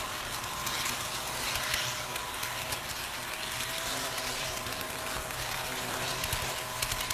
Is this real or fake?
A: real